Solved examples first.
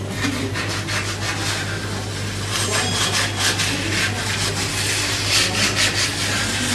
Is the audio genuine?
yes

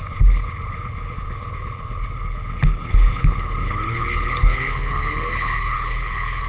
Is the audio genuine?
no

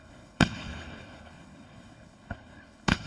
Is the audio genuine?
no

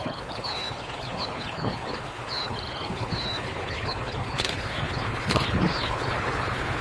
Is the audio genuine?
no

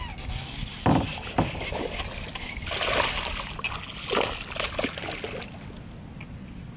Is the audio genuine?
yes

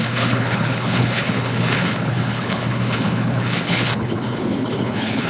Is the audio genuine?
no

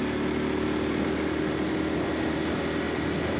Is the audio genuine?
yes